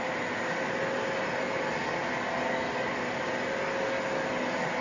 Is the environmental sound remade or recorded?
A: recorded